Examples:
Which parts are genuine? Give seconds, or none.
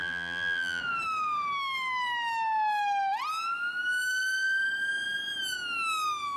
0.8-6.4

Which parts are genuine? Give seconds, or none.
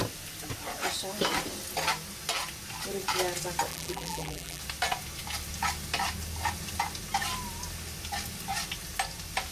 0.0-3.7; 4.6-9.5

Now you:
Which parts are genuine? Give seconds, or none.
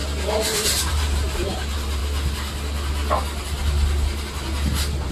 0.0-0.8; 2.0-5.1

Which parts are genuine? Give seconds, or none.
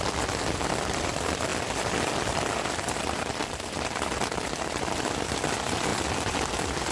none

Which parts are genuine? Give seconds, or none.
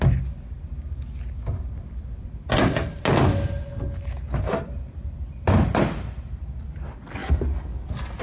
0.0-8.2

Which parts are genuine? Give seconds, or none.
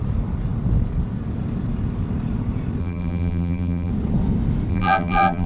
0.0-2.8; 3.9-4.7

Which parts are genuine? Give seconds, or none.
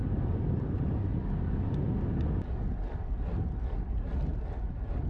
0.9-5.1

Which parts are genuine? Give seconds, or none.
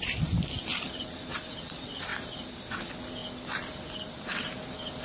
0.0-5.0